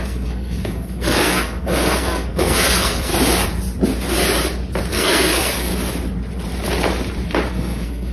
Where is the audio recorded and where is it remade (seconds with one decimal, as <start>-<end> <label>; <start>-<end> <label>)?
0.0-3.1 remade; 3.1-4.9 recorded; 4.9-5.7 remade; 5.7-7.5 recorded; 7.5-8.1 remade